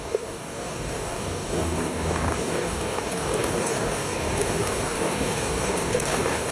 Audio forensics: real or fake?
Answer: fake